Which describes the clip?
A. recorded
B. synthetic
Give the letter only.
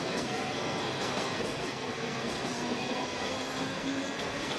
B